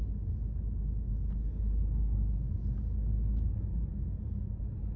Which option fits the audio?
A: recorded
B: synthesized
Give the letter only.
A